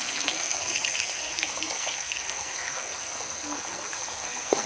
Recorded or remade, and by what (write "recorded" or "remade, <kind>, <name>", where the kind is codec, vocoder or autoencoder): remade, codec, SNAC